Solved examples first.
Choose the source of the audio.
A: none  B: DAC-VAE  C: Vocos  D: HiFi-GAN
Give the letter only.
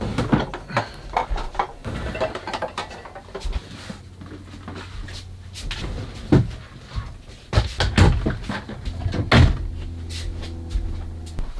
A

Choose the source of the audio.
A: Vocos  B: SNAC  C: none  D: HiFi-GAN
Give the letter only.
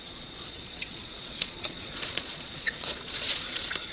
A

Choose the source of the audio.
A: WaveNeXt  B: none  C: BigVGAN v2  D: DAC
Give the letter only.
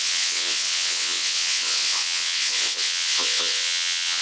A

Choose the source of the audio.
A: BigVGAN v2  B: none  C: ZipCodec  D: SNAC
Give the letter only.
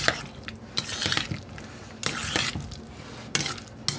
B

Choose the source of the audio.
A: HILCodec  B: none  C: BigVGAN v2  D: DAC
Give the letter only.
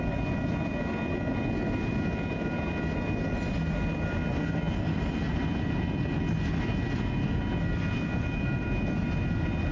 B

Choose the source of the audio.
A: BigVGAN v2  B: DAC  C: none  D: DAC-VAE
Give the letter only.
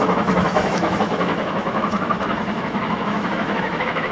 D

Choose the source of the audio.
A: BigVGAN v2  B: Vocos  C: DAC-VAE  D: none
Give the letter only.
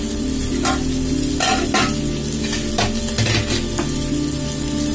D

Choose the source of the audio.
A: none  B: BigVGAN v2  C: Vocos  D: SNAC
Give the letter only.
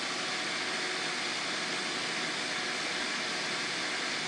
A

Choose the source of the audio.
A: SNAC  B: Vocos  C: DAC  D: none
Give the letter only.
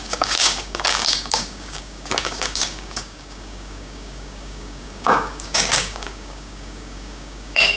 C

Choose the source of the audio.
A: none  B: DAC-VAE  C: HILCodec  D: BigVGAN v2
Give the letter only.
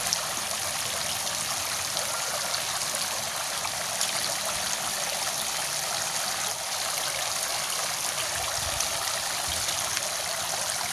A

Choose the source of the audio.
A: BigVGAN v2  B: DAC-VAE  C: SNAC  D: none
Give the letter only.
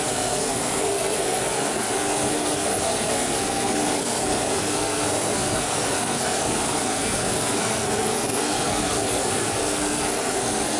C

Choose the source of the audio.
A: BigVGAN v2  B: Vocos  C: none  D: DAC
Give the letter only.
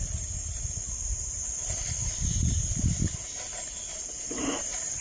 C